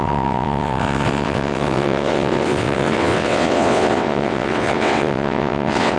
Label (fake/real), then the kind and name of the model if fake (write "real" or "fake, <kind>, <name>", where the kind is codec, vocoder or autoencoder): fake, vocoder, WaveNeXt